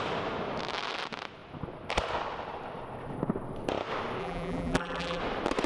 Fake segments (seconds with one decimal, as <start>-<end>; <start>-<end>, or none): 4.2-5.2